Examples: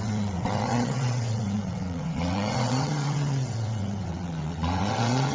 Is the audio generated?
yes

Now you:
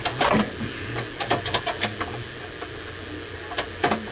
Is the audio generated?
no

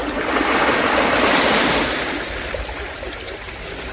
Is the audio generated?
no